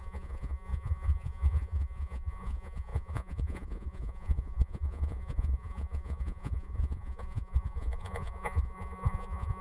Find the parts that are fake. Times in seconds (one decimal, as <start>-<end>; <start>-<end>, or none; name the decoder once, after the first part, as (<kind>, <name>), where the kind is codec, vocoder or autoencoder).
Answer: 0.0-9.6 (vocoder, Vocos)